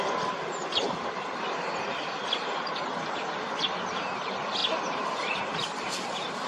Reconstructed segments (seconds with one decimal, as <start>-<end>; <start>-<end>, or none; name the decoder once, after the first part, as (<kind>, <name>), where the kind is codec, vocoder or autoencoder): 0.6-1.3 (vocoder, BigVGAN v2); 2.2-2.9